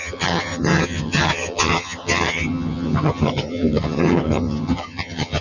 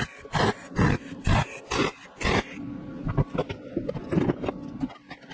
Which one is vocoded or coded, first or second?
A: first